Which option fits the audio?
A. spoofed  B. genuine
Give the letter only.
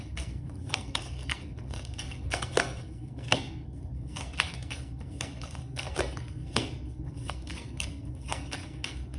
A